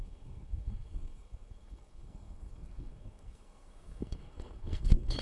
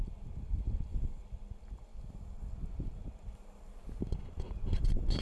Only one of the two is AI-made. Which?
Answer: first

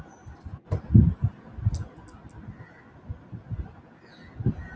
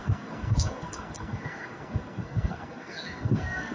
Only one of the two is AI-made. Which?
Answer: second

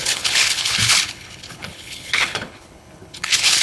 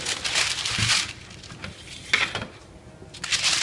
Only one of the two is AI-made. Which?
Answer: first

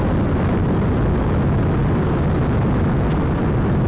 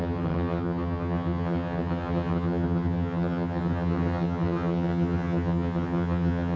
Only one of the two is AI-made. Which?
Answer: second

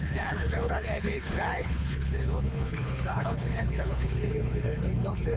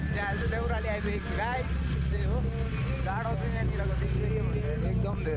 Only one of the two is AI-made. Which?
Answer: first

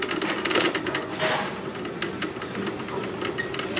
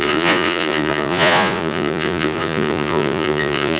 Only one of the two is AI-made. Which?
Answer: second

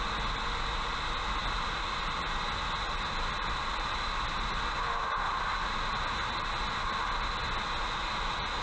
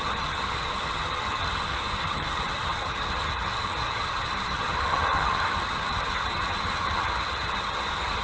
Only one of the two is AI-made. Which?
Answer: second